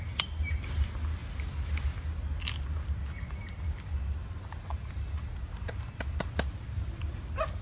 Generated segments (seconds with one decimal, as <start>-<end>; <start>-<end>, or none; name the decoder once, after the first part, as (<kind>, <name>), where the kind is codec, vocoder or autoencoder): none